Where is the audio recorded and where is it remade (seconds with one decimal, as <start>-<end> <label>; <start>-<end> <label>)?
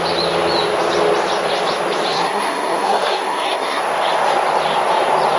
0.0-2.1 recorded; 2.1-3.8 remade; 3.8-5.4 recorded